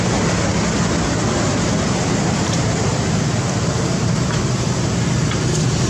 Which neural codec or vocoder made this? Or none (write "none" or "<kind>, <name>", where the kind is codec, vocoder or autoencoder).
none